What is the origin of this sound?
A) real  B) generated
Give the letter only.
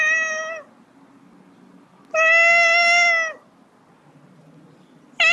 A